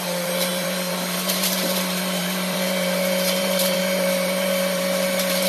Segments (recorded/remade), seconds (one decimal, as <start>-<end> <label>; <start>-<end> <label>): 0.0-5.5 remade